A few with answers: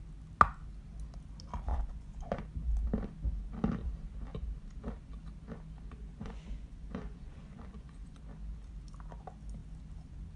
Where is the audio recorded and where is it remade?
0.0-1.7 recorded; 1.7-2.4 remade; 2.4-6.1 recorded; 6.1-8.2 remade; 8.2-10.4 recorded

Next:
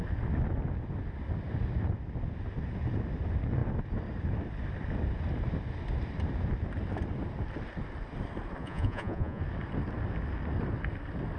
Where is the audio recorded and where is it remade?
0.0-8.6 recorded; 8.6-9.4 remade; 9.4-11.4 recorded

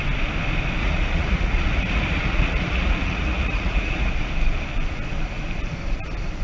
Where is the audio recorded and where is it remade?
0.0-0.8 recorded; 0.8-4.1 remade; 4.1-6.4 recorded

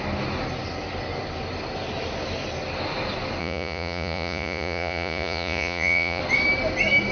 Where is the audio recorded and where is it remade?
0.0-3.4 recorded; 3.4-6.2 remade; 6.2-7.1 recorded

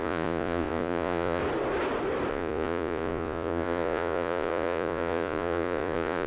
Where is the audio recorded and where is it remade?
0.0-1.4 remade; 1.4-2.3 recorded; 2.3-6.3 remade

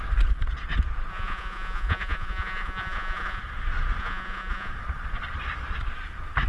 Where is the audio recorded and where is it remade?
0.0-1.1 recorded; 1.1-3.4 remade; 3.4-4.0 recorded; 4.0-4.7 remade; 4.7-6.5 recorded

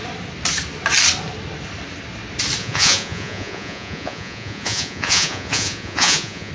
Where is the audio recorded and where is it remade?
0.0-2.6 recorded; 2.6-6.5 remade